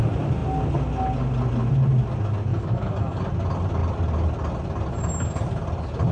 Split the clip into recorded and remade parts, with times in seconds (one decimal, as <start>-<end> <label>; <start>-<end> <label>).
0.0-2.5 recorded; 2.5-3.2 remade; 3.2-6.1 recorded